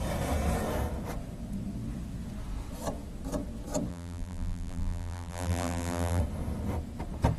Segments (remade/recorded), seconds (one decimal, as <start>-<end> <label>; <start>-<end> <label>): 0.0-3.9 recorded; 3.9-6.2 remade; 6.2-7.4 recorded